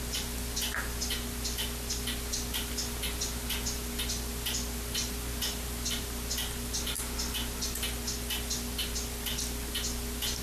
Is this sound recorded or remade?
recorded